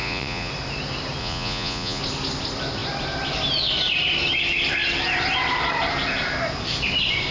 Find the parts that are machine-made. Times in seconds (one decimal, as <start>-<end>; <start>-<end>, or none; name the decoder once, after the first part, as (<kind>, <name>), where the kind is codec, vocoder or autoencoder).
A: 0.0-0.5 (vocoder, Vocos); 1.2-2.0